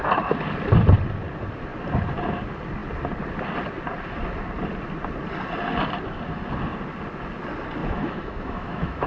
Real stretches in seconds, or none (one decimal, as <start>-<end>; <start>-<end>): 0.0-7.8